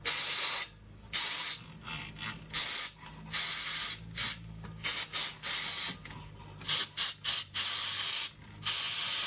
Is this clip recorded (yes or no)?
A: yes